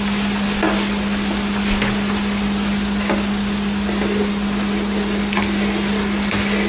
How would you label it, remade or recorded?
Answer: recorded